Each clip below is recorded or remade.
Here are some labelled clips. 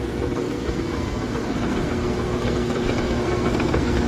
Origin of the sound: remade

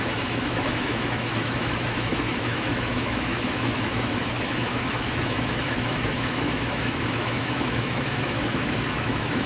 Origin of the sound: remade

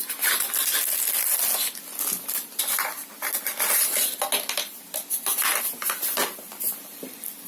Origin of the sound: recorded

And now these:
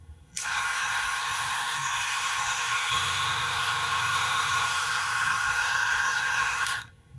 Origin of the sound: remade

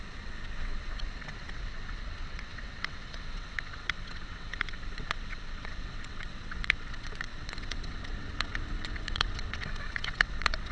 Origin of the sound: remade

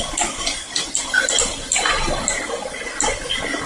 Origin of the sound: recorded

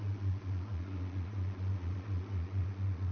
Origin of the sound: remade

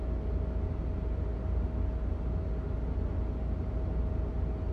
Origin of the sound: recorded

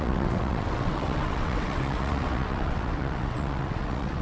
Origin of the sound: remade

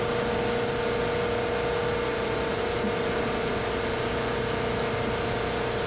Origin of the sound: recorded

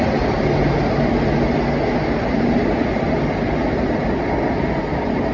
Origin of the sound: recorded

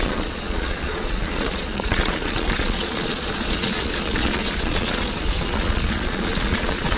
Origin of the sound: remade